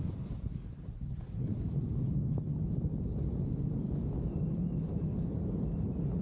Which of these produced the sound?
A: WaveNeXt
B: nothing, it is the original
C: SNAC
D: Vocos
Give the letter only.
B